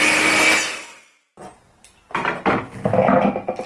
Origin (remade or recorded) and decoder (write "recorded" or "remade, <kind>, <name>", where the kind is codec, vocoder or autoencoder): recorded